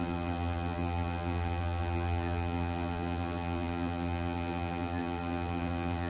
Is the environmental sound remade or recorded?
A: remade